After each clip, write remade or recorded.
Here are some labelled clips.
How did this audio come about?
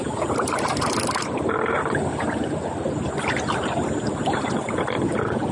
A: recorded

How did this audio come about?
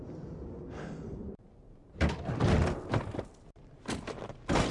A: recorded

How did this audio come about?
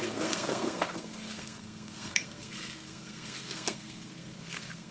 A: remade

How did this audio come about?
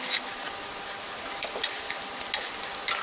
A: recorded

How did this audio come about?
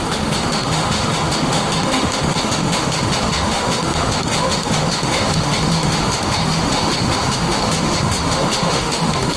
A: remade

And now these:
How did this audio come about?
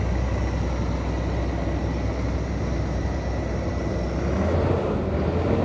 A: recorded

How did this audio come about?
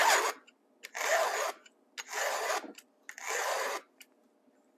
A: recorded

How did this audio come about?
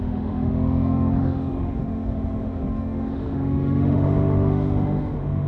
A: remade